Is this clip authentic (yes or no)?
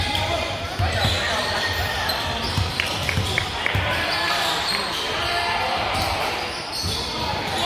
no